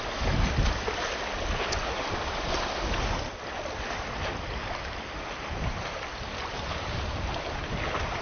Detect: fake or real real